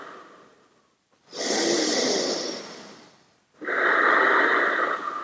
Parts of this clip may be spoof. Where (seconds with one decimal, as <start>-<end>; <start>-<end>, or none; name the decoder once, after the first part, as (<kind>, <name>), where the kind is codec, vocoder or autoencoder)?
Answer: none